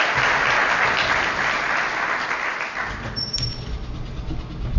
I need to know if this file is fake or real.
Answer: real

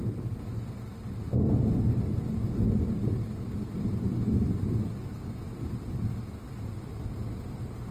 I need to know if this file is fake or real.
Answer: real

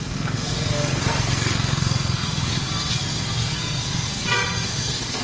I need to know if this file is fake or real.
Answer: fake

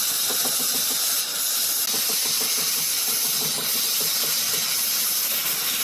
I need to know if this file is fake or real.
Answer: real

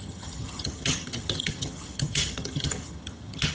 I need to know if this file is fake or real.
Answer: fake